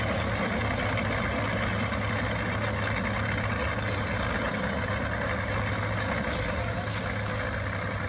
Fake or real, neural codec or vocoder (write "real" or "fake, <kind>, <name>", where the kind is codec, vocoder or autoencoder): real